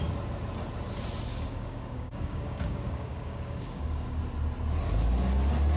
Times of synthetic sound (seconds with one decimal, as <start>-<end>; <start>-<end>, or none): 1.3-4.2